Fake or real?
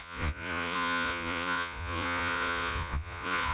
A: fake